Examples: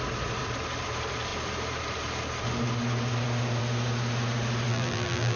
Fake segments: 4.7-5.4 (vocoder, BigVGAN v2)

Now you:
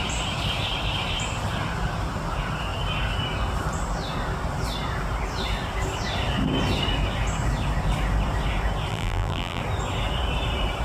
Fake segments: 8.9-9.6 (vocoder, BigVGAN v2)

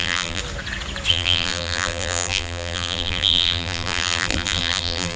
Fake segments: 0.0-0.4 (vocoder, BigVGAN v2); 1.1-5.2

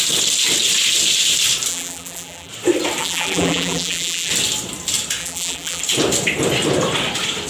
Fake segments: 1.7-2.5 (vocoder, BigVGAN v2); 3.0-4.3; 5.2-5.8